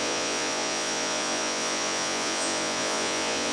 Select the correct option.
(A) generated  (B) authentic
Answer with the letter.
A